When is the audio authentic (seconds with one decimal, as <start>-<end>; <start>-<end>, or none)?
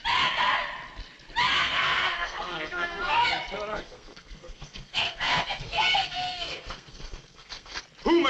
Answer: 0.0-1.6; 3.3-3.7; 7.8-8.3